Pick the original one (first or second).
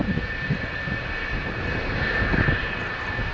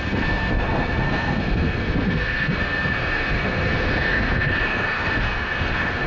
first